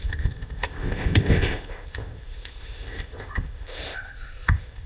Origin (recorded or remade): remade